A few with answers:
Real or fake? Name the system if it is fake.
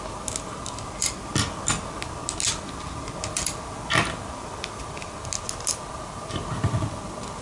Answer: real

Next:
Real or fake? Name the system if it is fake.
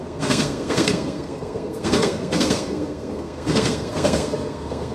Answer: fake, codec, SNAC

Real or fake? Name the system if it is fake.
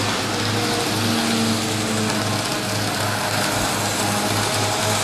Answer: real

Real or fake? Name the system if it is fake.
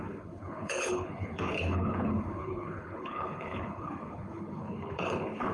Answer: fake, codec, HILCodec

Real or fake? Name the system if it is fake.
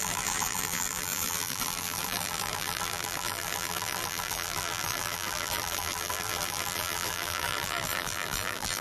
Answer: fake, vocoder, BigVGAN v2